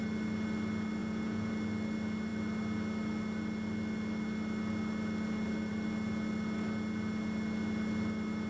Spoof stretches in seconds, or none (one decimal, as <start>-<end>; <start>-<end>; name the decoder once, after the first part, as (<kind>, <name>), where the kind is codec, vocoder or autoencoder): 1.0-1.5 (vocoder, Vocos)